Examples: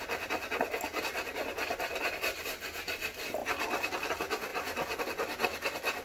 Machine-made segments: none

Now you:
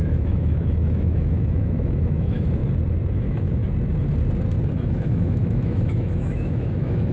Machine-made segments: 0.0-2.6 (autoencoder, DAC-VAE); 3.1-3.6; 4.7-7.1

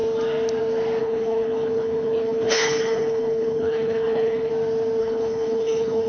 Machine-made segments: 1.0-4.5 (codec, HILCodec); 5.0-6.1

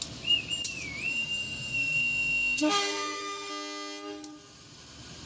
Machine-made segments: 1.1-3.5 (autoencoder, DAC-VAE)

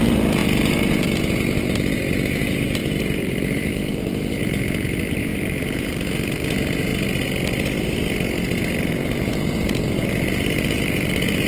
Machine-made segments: 0.0-6.9 (vocoder, BigVGAN v2); 8.9-11.5